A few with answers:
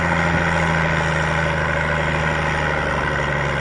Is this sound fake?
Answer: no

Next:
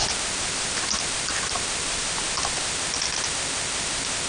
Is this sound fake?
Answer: no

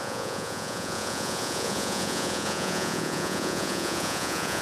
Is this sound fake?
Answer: yes